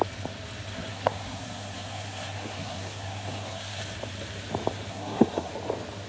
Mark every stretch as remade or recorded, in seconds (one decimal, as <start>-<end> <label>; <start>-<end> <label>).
0.0-0.9 recorded; 0.9-3.8 remade; 3.8-4.9 recorded; 4.9-5.5 remade; 5.5-6.1 recorded